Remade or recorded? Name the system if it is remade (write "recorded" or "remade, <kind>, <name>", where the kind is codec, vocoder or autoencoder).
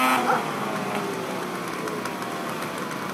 recorded